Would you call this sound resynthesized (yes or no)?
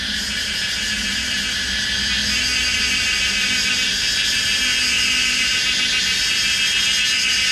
no